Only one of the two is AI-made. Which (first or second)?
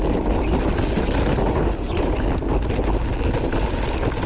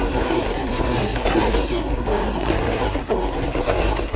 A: second